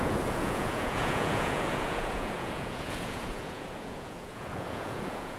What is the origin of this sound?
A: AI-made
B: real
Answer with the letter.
A